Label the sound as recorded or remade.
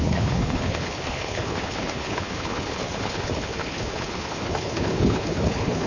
remade